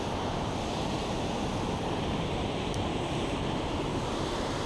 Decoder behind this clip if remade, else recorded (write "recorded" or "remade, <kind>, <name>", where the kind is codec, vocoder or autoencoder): recorded